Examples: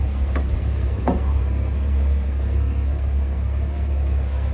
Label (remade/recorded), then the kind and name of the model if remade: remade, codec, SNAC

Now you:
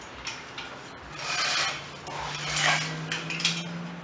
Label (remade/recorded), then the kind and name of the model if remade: recorded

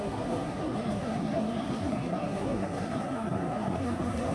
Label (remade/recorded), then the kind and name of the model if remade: remade, codec, SNAC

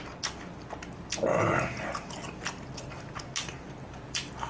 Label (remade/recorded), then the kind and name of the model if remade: recorded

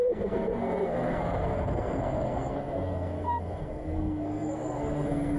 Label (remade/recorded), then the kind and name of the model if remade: remade, codec, SNAC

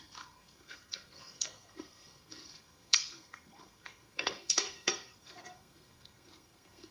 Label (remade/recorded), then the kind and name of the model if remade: remade, codec, SNAC